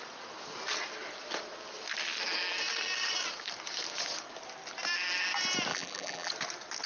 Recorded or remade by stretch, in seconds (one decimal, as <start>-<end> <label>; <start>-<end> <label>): 0.0-5.7 recorded; 5.7-6.3 remade; 6.3-6.9 recorded